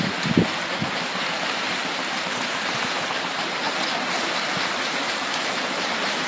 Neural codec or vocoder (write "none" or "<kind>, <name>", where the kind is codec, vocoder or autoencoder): none